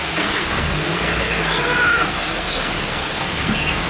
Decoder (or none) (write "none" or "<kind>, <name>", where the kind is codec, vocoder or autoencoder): codec, SNAC